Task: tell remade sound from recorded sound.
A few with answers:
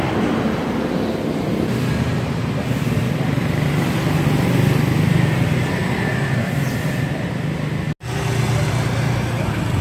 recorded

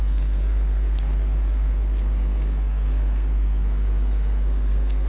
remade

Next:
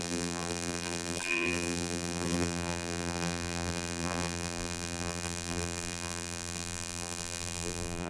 remade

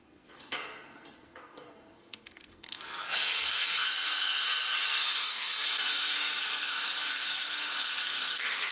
remade